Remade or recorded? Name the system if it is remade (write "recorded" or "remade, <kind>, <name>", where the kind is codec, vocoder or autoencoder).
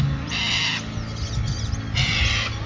recorded